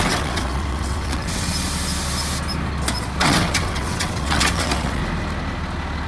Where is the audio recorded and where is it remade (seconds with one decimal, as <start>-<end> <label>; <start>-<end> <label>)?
0.0-1.5 remade; 1.5-3.2 recorded; 3.2-5.0 remade; 5.0-6.1 recorded

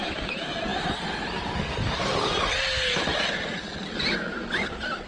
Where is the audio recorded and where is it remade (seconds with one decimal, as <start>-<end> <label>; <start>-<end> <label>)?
0.0-5.1 recorded

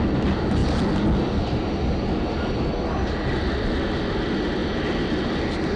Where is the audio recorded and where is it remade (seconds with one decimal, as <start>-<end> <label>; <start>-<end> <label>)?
0.0-5.8 recorded

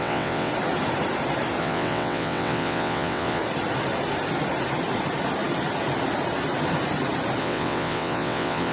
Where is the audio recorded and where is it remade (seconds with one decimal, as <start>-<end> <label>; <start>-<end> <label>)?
0.0-0.5 remade; 0.5-1.6 recorded; 1.6-3.4 remade; 3.4-7.4 recorded; 7.4-8.7 remade

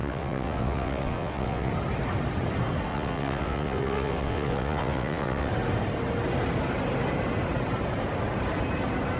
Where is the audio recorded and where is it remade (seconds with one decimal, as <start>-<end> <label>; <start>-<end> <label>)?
0.0-1.7 remade; 1.7-2.9 recorded; 2.9-5.5 remade; 5.5-9.2 recorded